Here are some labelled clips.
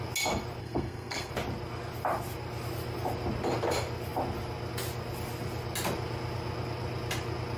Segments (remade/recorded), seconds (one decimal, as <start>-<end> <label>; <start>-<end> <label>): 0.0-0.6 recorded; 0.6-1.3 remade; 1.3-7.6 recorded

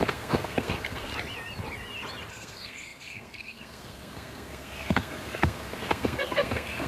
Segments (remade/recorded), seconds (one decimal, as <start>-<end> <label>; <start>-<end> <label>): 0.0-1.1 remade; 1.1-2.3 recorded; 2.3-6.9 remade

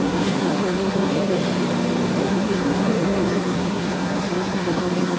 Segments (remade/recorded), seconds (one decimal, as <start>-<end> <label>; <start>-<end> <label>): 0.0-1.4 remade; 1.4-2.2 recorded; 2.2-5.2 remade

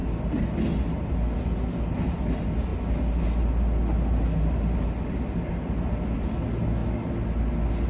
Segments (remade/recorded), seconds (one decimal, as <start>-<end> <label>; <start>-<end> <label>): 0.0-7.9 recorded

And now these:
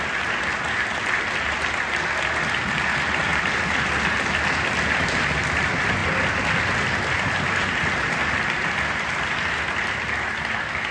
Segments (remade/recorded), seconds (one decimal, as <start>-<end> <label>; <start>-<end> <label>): 0.0-10.9 recorded

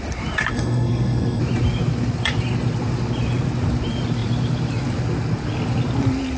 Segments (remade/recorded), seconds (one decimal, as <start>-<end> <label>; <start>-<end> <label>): 0.0-0.5 recorded; 0.5-1.4 remade; 1.4-6.4 recorded

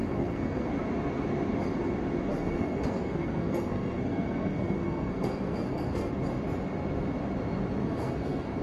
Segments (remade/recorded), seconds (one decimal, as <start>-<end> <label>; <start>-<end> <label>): 0.0-0.7 remade; 0.7-2.3 recorded; 2.3-6.1 remade; 6.1-7.8 recorded; 7.8-8.6 remade

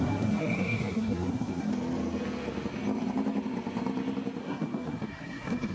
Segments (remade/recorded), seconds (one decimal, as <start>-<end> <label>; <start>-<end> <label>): 0.0-1.7 remade; 1.7-4.4 recorded; 4.4-5.7 remade